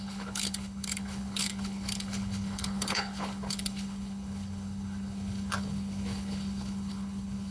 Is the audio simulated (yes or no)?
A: yes